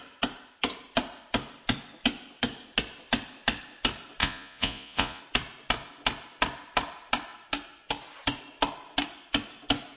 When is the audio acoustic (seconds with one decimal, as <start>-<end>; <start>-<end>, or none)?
0.0-4.2; 5.2-10.0

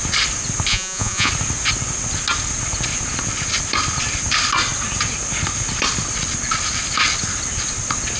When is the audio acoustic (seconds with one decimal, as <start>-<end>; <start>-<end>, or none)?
0.0-0.7; 1.3-8.2